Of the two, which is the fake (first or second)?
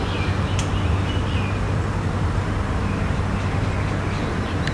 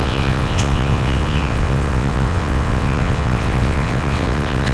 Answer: second